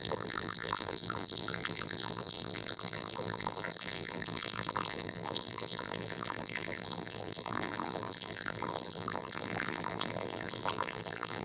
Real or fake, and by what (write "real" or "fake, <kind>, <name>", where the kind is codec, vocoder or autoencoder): fake, vocoder, BigVGAN v2